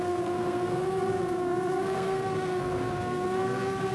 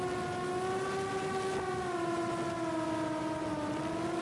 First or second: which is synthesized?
first